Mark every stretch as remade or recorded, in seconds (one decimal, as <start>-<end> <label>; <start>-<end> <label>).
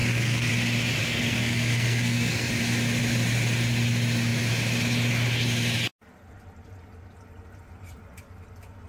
0.0-0.5 remade; 0.5-1.0 recorded; 1.0-2.5 remade; 2.5-8.9 recorded